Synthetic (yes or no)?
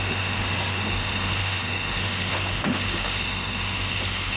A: yes